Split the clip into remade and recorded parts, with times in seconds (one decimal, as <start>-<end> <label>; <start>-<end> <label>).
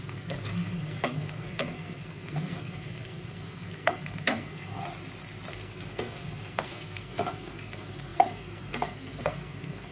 0.0-4.8 remade; 4.8-5.5 recorded; 5.5-9.9 remade